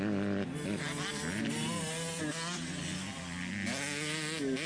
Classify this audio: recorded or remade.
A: recorded